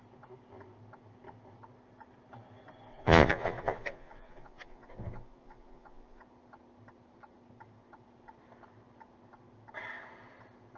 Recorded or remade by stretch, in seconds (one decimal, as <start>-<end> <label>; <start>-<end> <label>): 0.0-2.9 recorded; 2.9-6.2 remade; 6.2-10.8 recorded